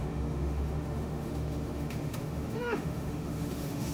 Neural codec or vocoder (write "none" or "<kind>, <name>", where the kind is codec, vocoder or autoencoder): autoencoder, DAC-VAE